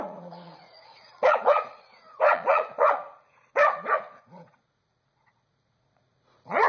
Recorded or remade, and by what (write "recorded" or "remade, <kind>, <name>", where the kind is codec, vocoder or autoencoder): remade, vocoder, Vocos